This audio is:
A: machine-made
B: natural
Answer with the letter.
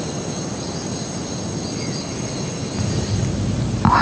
B